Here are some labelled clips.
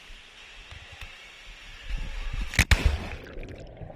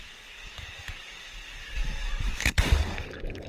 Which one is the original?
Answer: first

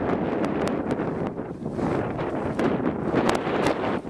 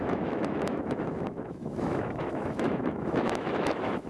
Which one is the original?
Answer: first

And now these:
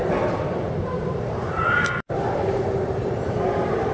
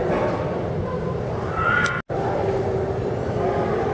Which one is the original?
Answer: second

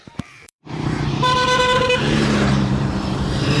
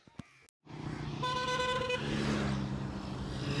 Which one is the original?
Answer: second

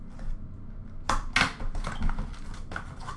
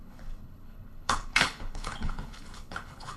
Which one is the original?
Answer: first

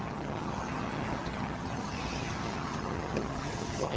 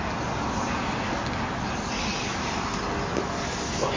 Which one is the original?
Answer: second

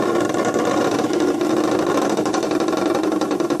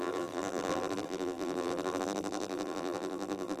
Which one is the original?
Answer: first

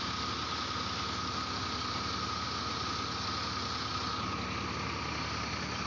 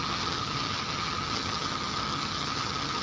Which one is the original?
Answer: first